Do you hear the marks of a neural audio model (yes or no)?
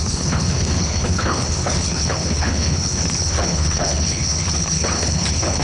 yes